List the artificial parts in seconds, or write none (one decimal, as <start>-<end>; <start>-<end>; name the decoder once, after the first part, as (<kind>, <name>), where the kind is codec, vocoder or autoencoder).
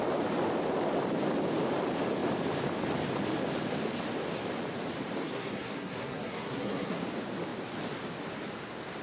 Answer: 5.2-7.0 (codec, SNAC)